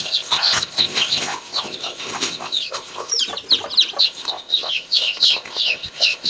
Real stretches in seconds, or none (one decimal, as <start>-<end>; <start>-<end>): 3.1-4.0